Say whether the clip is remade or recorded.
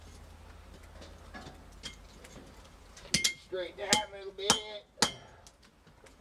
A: recorded